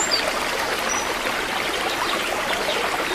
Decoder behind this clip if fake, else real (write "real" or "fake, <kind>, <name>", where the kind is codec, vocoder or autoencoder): real